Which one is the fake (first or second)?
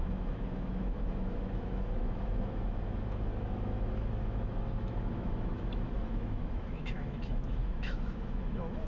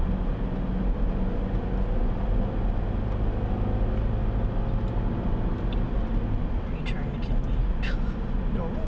first